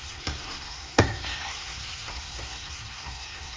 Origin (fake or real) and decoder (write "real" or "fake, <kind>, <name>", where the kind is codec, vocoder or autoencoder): fake, codec, SNAC